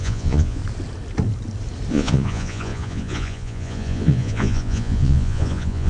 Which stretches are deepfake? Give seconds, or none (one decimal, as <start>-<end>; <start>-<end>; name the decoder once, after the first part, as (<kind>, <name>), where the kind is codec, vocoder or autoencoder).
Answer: 0.0-0.6 (vocoder, Vocos); 1.9-5.9